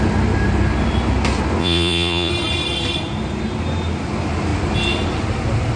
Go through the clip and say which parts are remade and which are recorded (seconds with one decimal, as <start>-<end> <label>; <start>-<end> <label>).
0.0-1.6 recorded; 1.6-2.3 remade; 2.3-5.8 recorded